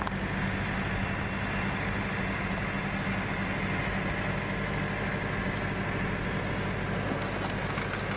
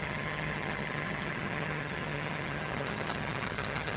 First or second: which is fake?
second